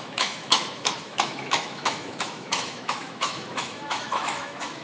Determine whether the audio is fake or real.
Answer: fake